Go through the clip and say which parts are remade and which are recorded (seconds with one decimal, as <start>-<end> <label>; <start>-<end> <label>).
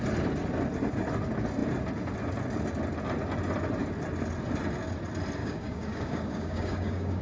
0.0-5.4 recorded; 5.4-7.2 remade